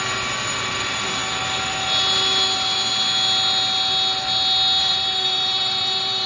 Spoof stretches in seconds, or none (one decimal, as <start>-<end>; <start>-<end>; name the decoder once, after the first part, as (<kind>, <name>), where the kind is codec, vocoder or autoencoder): 0.0-1.2 (vocoder, BigVGAN v2); 4.8-6.3